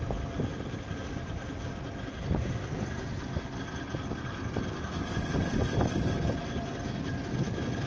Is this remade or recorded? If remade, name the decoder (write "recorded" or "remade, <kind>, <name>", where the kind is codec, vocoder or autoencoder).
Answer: recorded